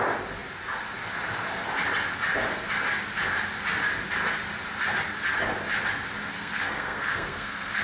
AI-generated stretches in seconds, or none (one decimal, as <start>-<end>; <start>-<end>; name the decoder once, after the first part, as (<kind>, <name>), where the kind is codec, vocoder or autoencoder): 6.3-7.8 (codec, SNAC)